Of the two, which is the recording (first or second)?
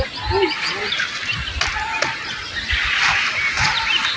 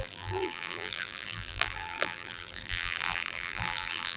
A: first